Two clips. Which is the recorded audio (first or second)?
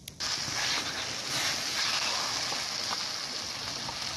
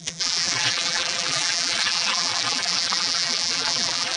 first